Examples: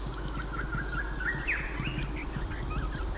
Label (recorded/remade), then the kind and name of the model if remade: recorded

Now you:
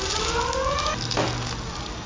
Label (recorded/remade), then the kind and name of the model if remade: recorded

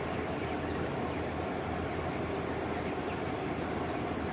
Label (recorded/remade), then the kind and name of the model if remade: recorded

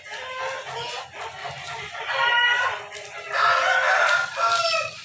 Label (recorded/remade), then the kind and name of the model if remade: recorded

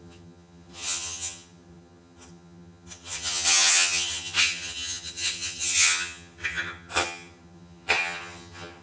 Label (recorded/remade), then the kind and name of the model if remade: remade, vocoder, HiFi-GAN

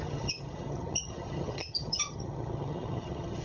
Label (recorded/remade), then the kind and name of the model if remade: remade, vocoder, HiFi-GAN